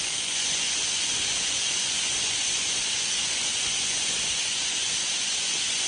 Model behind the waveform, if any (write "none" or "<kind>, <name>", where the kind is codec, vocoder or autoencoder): vocoder, Vocos